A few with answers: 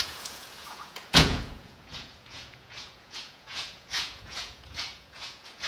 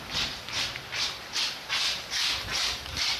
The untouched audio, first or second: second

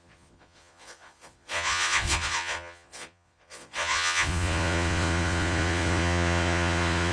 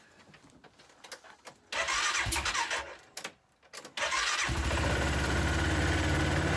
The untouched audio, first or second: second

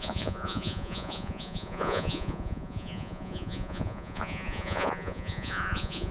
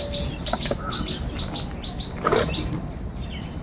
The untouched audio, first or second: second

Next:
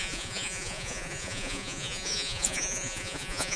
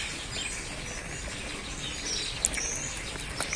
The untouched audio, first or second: second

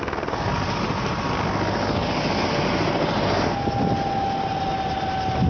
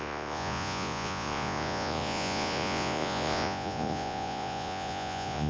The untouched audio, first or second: first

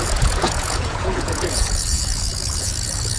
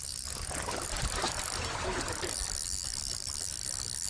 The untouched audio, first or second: second